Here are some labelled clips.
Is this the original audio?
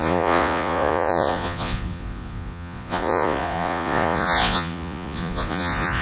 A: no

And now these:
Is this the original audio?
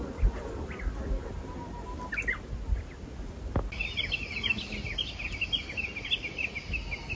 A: yes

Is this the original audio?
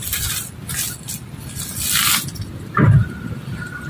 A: yes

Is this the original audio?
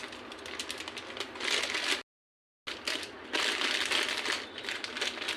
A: yes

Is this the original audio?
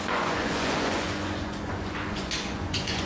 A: no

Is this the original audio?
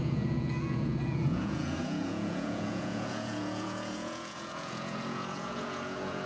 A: no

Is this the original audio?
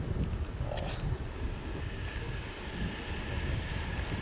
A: yes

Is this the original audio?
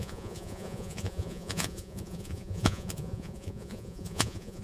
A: no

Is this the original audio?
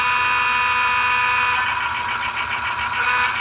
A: yes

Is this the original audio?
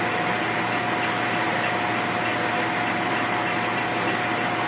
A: yes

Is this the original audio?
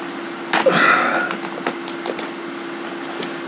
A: yes